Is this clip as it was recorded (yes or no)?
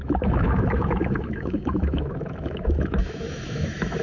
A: no